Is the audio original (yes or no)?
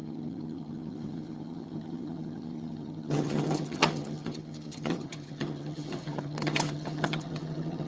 no